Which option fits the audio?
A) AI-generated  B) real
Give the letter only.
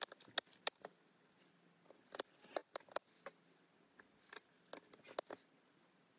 B